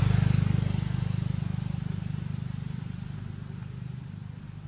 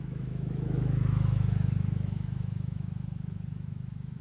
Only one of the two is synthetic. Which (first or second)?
second